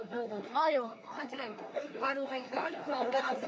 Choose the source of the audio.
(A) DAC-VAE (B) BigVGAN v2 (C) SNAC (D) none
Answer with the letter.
C